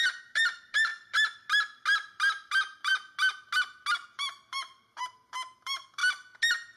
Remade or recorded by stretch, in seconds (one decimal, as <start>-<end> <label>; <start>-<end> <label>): 0.0-0.9 remade; 0.9-2.5 recorded; 2.5-2.9 remade; 2.9-3.9 recorded; 3.9-6.0 remade; 6.0-6.8 recorded